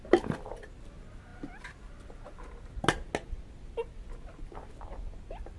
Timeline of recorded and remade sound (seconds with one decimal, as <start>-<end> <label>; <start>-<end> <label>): 0.0-5.6 recorded